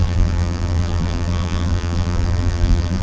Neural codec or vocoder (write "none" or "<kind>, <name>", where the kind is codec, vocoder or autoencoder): vocoder, BigVGAN v2